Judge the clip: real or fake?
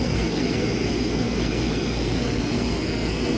fake